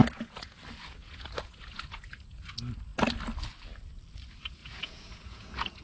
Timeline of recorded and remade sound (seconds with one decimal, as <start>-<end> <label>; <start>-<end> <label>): 0.0-0.6 remade; 0.6-1.0 recorded; 1.0-2.5 remade; 2.5-4.6 recorded; 4.6-5.8 remade